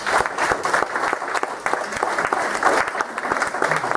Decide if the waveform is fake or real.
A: real